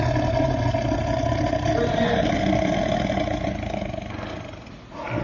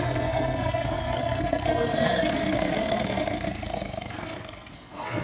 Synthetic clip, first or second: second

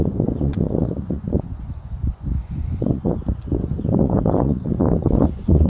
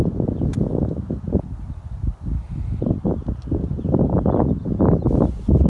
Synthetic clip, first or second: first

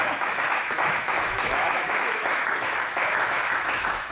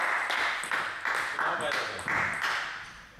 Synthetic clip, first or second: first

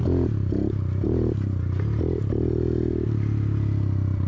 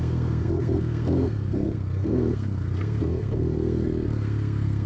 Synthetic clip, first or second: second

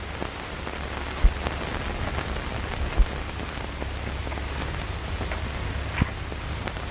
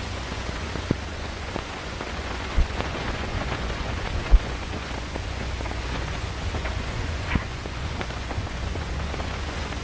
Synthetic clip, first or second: second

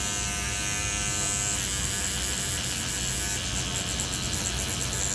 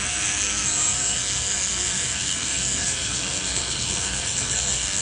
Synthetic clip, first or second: second